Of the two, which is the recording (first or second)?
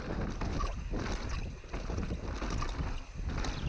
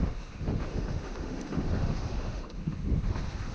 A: first